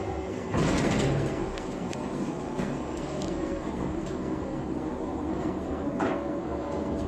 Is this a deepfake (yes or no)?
yes